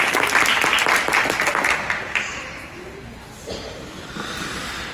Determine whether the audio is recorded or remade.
recorded